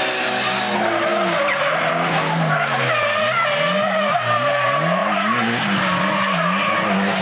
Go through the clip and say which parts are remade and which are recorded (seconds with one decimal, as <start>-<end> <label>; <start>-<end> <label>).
0.0-7.2 recorded